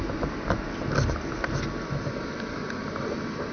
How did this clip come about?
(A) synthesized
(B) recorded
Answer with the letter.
B